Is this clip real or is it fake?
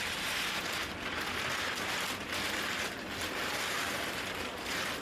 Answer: real